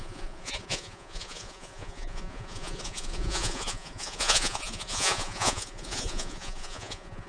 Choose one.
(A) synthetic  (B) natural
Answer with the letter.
A